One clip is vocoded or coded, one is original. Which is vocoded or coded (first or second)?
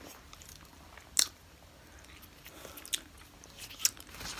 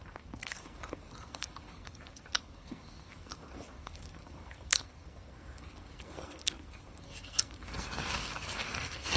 second